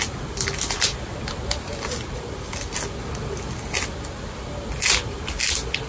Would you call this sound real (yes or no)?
yes